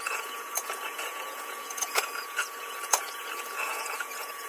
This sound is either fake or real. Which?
fake